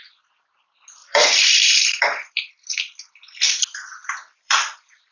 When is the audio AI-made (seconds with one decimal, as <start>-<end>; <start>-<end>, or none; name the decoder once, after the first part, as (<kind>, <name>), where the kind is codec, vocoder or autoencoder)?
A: 1.0-2.6 (vocoder, BigVGAN v2); 4.0-5.1